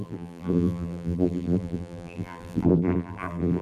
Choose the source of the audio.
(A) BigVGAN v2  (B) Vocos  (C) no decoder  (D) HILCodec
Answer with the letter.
A